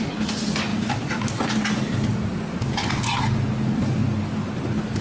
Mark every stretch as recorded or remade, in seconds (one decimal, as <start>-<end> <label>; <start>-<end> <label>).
0.0-5.0 recorded